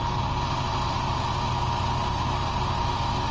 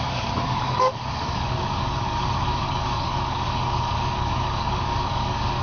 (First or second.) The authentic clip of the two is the first